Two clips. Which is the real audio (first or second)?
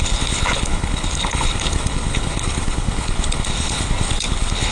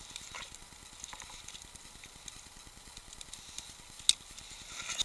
second